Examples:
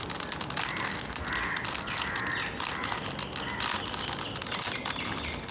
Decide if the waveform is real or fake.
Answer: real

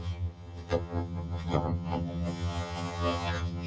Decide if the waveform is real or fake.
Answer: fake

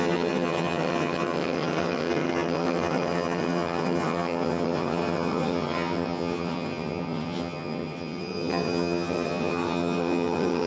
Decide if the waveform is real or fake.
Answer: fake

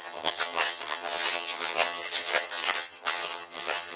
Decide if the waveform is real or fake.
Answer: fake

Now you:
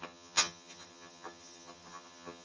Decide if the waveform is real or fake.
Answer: fake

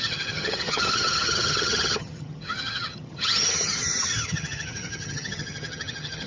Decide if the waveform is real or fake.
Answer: fake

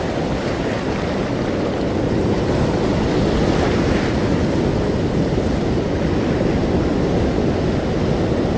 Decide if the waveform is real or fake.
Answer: real